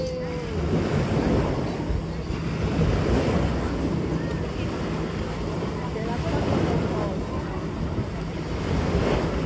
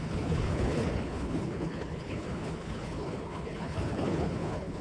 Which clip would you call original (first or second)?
first